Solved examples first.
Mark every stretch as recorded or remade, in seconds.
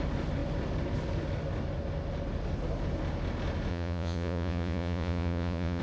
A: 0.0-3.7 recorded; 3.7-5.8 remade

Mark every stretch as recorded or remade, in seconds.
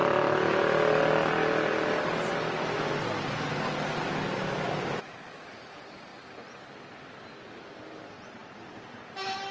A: 0.0-5.0 recorded; 5.0-6.1 remade; 6.1-7.6 recorded; 7.6-9.5 remade